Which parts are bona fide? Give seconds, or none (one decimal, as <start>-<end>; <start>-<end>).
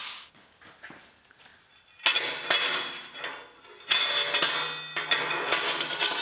0.6-6.2